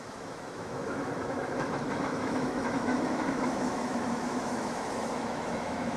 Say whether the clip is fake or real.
fake